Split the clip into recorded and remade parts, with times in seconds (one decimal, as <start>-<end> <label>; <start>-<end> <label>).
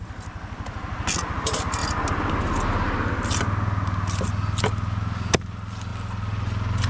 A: 0.0-6.9 recorded